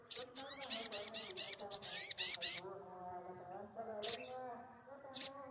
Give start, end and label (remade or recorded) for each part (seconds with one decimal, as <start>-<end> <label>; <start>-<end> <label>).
0.0-3.9 remade; 3.9-4.5 recorded; 4.5-5.5 remade

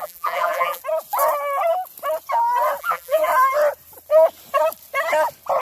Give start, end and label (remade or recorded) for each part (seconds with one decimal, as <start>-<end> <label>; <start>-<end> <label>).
0.0-0.8 remade; 0.8-2.8 recorded; 2.8-3.3 remade; 3.3-5.6 recorded

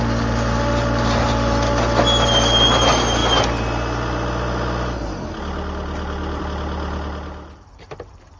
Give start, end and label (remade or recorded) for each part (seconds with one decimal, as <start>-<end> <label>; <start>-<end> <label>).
0.0-8.4 recorded

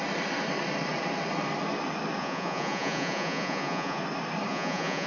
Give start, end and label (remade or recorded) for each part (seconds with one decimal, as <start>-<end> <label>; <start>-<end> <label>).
0.0-2.2 recorded; 2.2-4.0 remade; 4.0-4.5 recorded; 4.5-5.1 remade

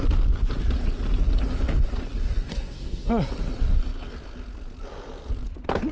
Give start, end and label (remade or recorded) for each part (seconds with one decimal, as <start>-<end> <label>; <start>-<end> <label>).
0.0-2.5 recorded; 2.5-3.1 remade; 3.1-5.9 recorded

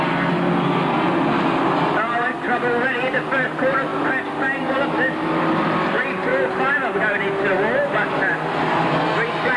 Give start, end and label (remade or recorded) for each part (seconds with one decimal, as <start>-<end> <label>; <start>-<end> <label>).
0.0-9.6 recorded